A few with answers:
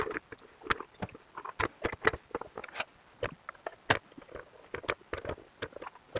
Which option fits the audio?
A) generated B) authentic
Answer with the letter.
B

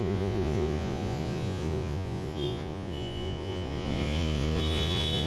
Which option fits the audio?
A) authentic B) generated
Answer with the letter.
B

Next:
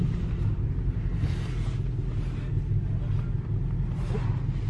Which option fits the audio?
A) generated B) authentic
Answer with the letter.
B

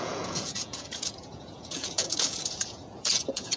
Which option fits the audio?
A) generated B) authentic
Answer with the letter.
A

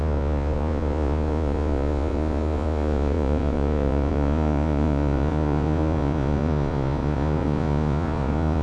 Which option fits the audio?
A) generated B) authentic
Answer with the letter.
A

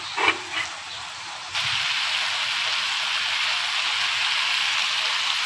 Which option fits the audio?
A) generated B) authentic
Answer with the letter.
B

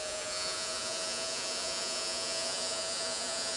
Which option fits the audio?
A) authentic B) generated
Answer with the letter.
B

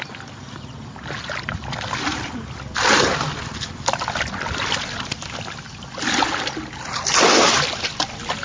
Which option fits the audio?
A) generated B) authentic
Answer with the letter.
B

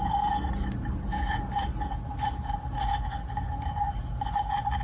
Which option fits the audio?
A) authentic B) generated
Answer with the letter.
A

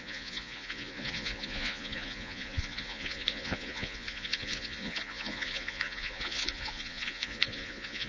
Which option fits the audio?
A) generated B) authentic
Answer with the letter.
A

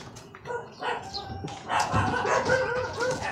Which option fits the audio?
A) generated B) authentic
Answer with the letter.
A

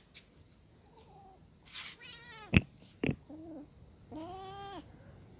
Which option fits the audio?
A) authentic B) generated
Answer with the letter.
A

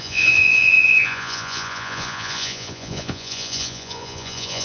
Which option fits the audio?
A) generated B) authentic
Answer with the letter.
A